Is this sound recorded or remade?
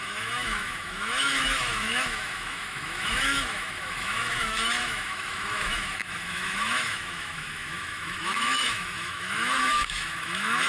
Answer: remade